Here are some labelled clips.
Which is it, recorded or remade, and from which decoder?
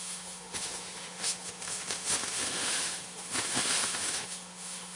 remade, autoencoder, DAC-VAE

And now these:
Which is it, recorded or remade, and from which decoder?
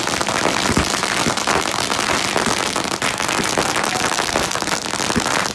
recorded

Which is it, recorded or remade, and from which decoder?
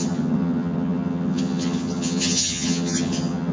remade, vocoder, HiFi-GAN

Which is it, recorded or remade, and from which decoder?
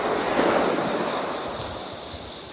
recorded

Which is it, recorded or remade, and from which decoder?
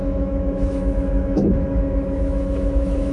remade, autoencoder, DAC-VAE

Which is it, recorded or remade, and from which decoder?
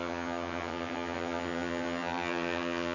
remade, vocoder, HiFi-GAN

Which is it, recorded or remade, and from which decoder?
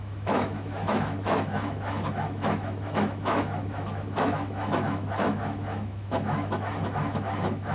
remade, autoencoder, DAC-VAE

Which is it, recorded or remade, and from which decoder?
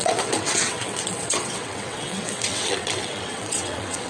remade, vocoder, WaveNeXt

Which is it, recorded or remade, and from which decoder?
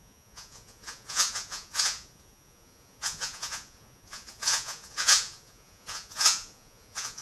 remade, vocoder, Vocos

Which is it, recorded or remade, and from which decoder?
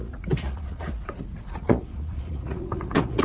remade, vocoder, Vocos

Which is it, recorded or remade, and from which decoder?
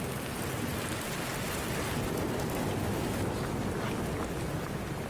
recorded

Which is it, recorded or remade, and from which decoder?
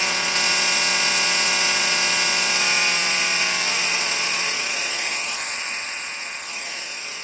remade, vocoder, Vocos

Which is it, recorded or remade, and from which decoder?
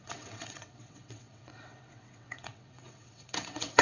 remade, vocoder, WaveNeXt